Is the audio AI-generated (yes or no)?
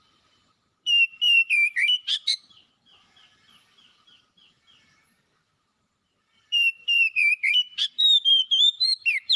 yes